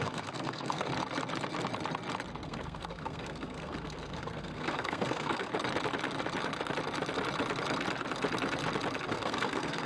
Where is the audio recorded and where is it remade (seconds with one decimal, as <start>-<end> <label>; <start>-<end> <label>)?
0.0-0.9 remade; 0.9-2.4 recorded; 2.4-5.5 remade; 5.5-9.1 recorded; 9.1-9.9 remade